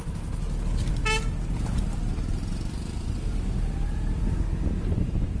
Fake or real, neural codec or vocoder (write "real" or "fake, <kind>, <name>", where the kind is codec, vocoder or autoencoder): real